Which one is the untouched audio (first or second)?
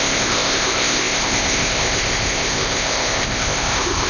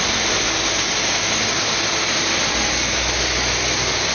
second